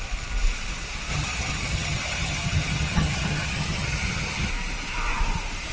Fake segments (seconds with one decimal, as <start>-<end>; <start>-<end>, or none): 1.1-4.5